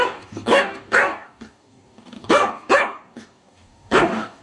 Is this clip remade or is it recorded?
remade